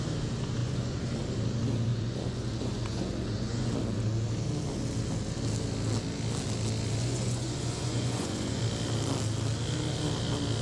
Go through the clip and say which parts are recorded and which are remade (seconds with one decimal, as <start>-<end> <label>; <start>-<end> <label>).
0.0-0.6 recorded; 0.6-1.1 remade; 1.1-1.9 recorded; 1.9-3.7 remade; 3.7-7.0 recorded; 7.0-8.6 remade; 8.6-10.6 recorded